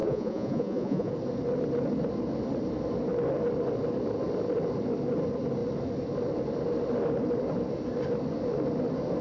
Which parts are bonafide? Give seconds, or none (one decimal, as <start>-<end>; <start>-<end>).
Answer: 1.1-9.2